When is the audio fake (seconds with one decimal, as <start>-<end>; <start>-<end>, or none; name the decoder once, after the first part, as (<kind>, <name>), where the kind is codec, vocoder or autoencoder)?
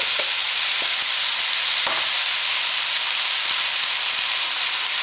none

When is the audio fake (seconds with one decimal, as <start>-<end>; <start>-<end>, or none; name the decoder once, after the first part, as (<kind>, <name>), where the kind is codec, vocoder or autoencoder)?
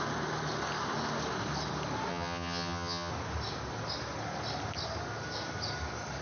2.1-3.1 (vocoder, HiFi-GAN)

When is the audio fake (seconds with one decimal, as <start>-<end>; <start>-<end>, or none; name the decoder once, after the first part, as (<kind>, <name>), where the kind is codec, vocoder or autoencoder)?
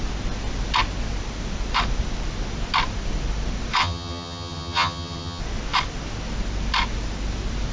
3.8-5.4 (vocoder, HiFi-GAN)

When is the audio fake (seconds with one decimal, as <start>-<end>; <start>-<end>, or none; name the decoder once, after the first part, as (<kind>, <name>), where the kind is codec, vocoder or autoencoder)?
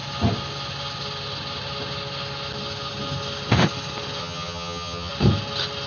4.2-5.1 (vocoder, HiFi-GAN)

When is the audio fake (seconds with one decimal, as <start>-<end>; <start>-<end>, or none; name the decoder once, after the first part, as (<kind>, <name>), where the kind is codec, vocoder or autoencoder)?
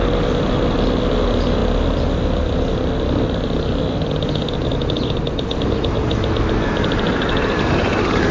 none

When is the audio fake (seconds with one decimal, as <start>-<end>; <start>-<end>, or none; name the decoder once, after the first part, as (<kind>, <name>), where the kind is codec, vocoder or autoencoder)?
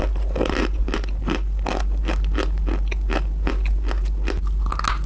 none